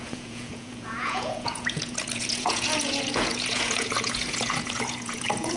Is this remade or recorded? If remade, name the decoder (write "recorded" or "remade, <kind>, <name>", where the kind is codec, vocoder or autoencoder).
remade, vocoder, Vocos